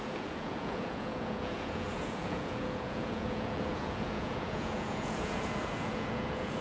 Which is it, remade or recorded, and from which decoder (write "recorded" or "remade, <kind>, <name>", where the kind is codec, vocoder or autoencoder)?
remade, vocoder, Vocos